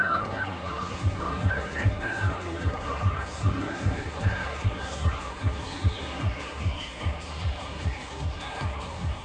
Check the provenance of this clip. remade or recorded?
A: remade